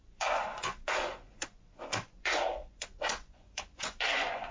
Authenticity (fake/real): fake